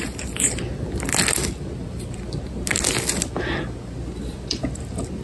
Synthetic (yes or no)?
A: no